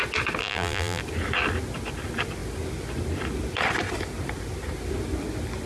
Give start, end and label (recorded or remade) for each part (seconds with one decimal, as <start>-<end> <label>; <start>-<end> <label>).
0.0-0.4 recorded; 0.4-1.0 remade; 1.0-5.7 recorded